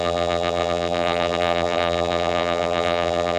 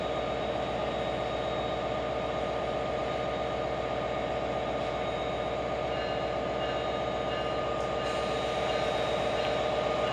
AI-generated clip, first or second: first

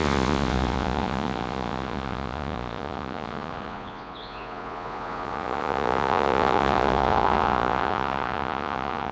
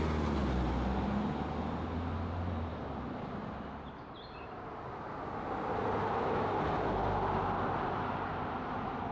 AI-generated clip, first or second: first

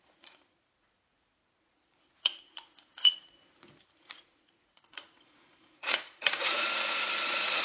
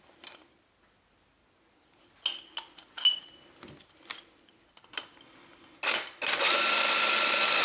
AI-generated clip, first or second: first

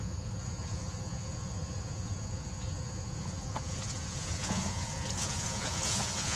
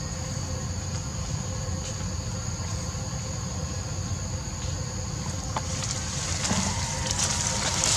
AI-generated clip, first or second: first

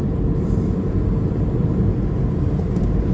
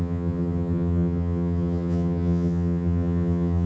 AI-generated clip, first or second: second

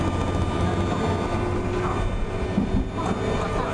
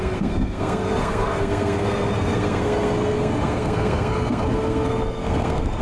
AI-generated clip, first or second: second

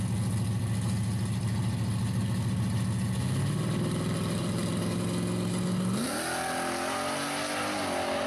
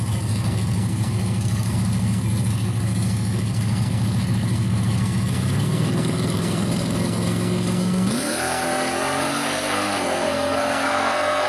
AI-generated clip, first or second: second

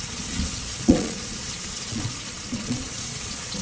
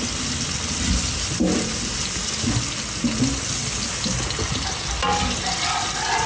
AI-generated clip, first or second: first